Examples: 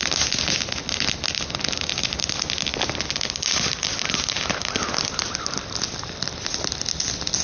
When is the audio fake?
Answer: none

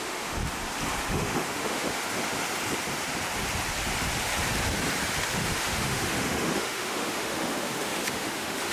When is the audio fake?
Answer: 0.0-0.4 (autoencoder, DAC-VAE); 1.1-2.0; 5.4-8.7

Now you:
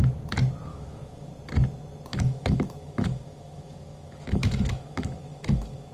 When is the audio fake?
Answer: 0.7-1.3 (autoencoder, DAC-VAE); 2.1-5.9

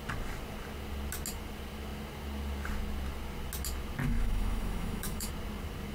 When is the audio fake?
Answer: 4.0-5.3 (autoencoder, DAC-VAE)

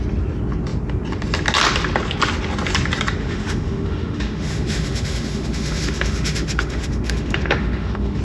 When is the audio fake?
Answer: 3.2-8.2 (autoencoder, DAC-VAE)

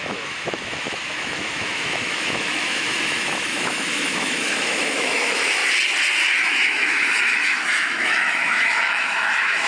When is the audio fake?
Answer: 0.0-5.6 (autoencoder, DAC-VAE); 6.5-9.7

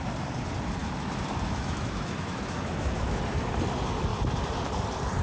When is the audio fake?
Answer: 0.8-3.2 (autoencoder, DAC-VAE)